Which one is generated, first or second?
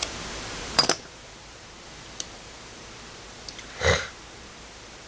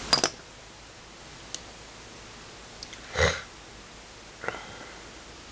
first